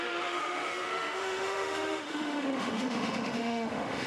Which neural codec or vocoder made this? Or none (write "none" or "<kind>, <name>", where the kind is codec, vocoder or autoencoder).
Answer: autoencoder, DAC-VAE